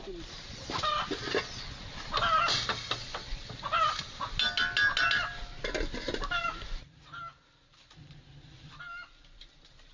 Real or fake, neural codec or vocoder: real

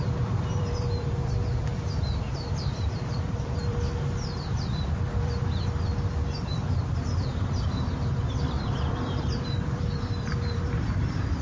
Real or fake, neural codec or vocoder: fake, vocoder, BigVGAN v2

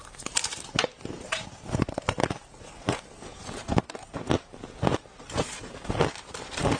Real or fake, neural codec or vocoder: fake, vocoder, BigVGAN v2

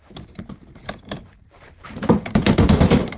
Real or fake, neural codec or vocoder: fake, vocoder, BigVGAN v2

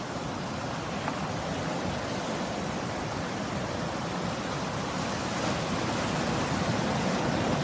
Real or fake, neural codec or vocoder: real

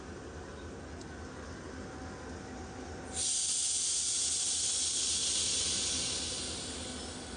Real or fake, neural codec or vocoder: real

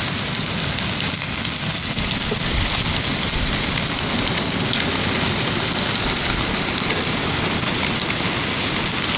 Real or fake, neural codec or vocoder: real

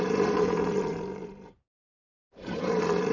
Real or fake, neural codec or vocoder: fake, vocoder, BigVGAN v2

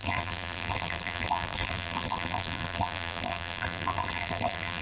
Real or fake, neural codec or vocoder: fake, vocoder, BigVGAN v2